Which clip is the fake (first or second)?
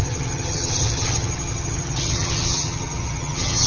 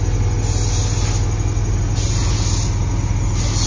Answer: first